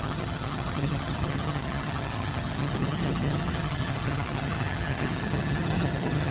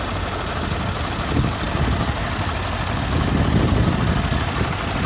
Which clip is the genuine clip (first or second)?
second